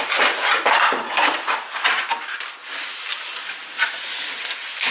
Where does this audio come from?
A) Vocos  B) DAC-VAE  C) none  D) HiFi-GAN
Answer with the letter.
C